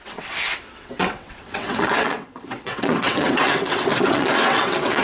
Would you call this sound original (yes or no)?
no